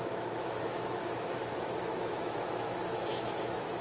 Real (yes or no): no